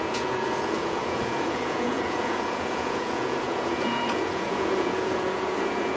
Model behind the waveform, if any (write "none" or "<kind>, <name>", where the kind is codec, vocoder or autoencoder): vocoder, Vocos